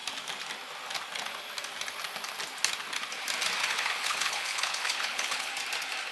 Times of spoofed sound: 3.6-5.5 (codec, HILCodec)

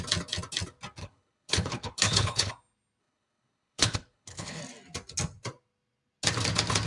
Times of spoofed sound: 1.0-2.5 (codec, HILCodec); 3.0-4.6

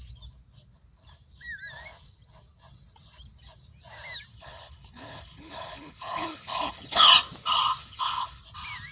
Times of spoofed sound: 4.3-7.1 (codec, HILCodec); 7.8-8.4

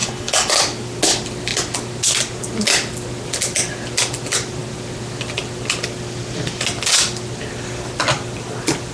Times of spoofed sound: 0.0-0.5 (codec, HILCodec)

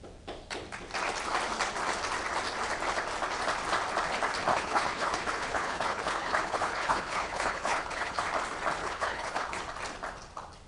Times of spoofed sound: 4.5-8.2 (codec, HILCodec); 8.8-9.6

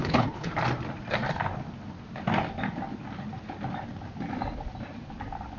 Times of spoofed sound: 0.0-0.5 (codec, HILCodec)

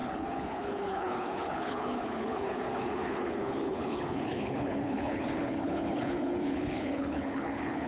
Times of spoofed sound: 0.0-7.9 (codec, HILCodec)

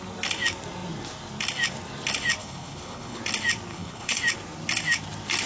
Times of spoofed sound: 2.4-3.2 (codec, HILCodec); 3.7-4.2